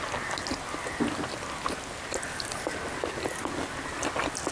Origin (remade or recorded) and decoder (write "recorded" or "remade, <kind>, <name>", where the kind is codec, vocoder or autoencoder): recorded